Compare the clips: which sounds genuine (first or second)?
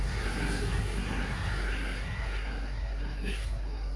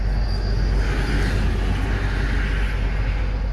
second